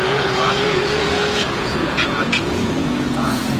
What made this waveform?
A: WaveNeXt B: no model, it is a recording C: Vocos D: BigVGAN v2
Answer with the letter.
C